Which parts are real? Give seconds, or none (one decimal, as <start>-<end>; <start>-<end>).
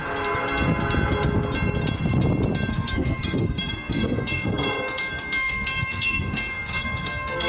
0.0-2.7